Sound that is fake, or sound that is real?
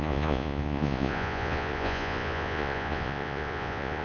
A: fake